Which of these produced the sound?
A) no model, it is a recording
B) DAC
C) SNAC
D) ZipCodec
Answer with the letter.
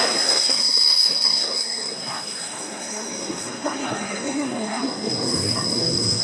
C